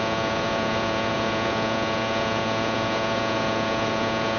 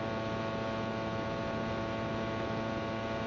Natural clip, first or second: second